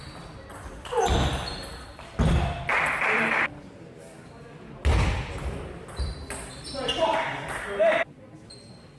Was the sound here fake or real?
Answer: real